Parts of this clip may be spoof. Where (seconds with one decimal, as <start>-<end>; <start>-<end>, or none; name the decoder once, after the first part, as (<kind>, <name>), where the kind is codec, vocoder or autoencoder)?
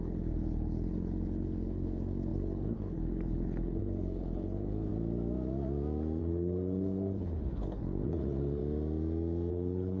0.0-4.9 (codec, HILCodec); 6.2-8.6; 9.5-10.0